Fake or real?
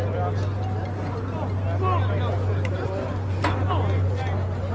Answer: real